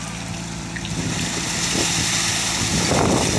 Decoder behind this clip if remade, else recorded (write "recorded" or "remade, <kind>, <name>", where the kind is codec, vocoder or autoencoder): recorded